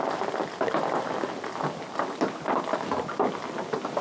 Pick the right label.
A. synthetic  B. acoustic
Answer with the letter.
B